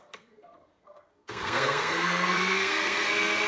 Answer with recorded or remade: remade